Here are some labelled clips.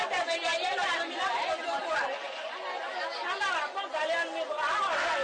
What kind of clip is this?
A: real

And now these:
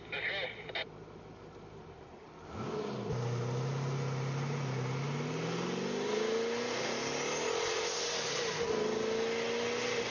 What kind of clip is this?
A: real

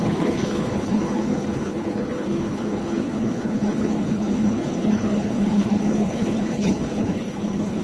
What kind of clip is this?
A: fake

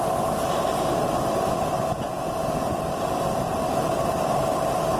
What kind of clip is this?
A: fake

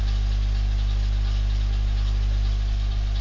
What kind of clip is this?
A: real